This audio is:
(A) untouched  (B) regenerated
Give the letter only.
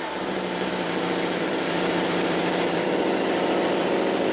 A